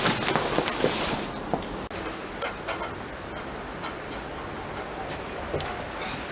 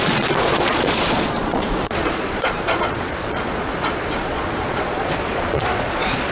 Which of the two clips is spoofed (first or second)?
second